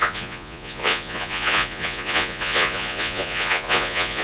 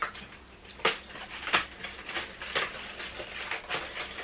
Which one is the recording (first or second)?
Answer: second